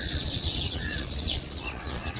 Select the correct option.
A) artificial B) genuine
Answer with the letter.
A